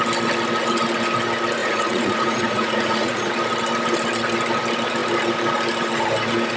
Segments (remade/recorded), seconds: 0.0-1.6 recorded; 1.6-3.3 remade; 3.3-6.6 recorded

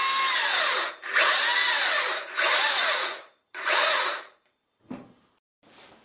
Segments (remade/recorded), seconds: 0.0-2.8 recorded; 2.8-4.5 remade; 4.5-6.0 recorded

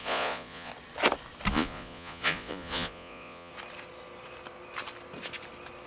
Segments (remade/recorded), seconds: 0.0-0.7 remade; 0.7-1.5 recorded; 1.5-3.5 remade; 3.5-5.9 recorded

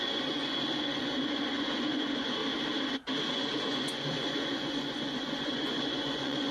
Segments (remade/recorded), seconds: 0.0-2.4 remade; 2.4-3.3 recorded; 3.3-6.5 remade

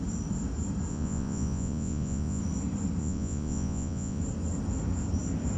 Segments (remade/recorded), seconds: 0.0-0.9 recorded; 0.9-2.4 remade; 2.4-3.0 recorded; 3.0-4.2 remade; 4.2-5.6 recorded